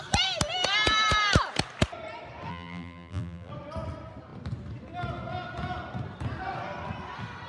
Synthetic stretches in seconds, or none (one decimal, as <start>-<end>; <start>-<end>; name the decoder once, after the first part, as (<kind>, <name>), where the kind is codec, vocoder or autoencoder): 2.5-3.5 (vocoder, BigVGAN v2)